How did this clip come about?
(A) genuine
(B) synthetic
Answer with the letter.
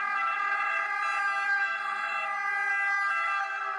A